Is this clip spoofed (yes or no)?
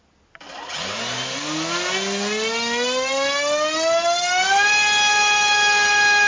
no